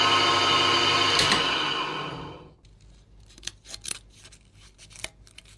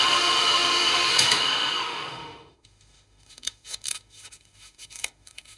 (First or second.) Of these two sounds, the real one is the first